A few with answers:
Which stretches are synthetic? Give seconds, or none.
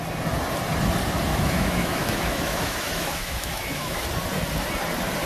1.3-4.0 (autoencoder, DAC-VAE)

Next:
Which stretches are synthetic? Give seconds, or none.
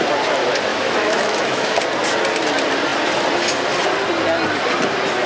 0.7-1.8 (autoencoder, DAC-VAE)